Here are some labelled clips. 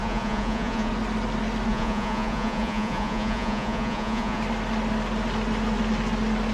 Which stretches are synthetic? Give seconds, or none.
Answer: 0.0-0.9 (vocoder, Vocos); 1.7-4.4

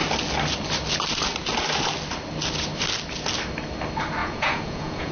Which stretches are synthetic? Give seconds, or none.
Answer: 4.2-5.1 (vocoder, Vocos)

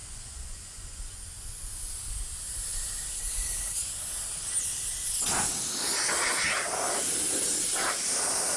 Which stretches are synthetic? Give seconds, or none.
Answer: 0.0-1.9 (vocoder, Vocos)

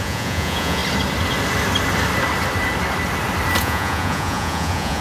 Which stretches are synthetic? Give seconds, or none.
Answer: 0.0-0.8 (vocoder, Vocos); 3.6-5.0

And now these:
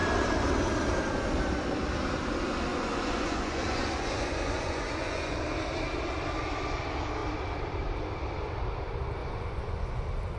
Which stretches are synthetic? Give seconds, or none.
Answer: 2.7-5.4 (vocoder, Vocos); 9.2-10.0